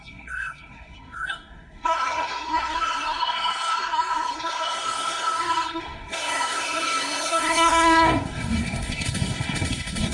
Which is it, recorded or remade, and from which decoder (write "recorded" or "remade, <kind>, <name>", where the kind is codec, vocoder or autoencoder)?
remade, codec, SNAC